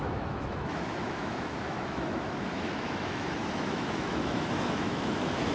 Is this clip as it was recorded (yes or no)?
no